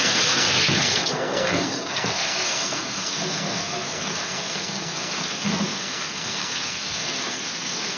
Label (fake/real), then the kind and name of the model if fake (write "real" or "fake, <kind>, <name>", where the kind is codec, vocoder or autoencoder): fake, codec, SNAC